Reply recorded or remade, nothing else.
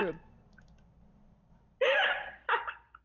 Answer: recorded